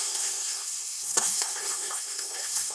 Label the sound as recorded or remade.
remade